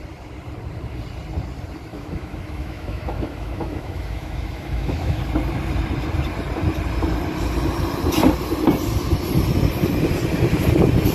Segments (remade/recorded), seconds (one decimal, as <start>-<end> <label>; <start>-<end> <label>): 0.0-1.9 recorded; 1.9-5.2 remade; 5.2-11.1 recorded